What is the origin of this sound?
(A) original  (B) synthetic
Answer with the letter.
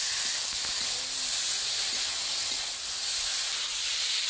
A